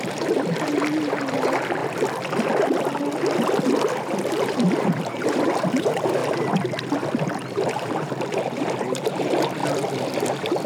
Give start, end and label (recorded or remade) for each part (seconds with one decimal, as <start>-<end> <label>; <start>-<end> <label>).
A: 0.0-1.8 remade; 1.8-4.3 recorded; 4.3-6.2 remade; 6.2-7.2 recorded; 7.2-9.6 remade; 9.6-10.7 recorded